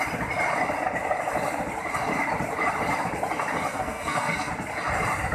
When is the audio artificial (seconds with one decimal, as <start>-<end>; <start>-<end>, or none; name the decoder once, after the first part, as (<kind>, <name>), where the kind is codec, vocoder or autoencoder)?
3.7-4.5 (codec, SNAC)